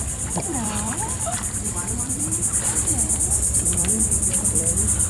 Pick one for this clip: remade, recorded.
remade